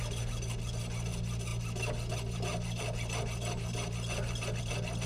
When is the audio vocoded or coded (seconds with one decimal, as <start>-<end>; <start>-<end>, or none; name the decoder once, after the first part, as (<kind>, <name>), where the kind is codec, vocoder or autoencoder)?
none